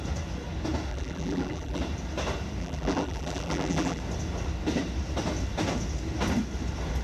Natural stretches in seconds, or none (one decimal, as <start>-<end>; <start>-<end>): 0.0-0.9; 1.8-2.6; 4.0-7.0